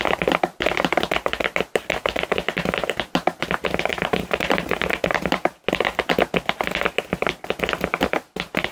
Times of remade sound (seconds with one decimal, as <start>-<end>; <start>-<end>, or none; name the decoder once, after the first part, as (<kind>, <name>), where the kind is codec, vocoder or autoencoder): 3.9-5.5 (vocoder, BigVGAN v2)